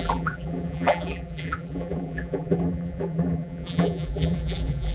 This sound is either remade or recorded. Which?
remade